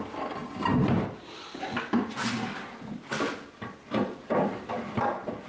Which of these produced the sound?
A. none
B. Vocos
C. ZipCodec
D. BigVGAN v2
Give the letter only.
A